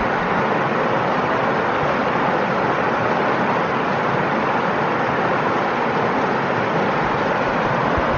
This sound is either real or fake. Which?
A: real